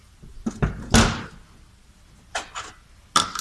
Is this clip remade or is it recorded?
recorded